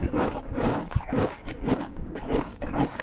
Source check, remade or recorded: remade